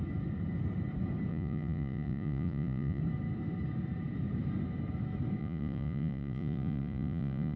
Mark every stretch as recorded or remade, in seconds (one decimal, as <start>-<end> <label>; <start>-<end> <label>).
0.0-1.3 recorded; 1.3-3.0 remade; 3.0-5.4 recorded; 5.4-7.6 remade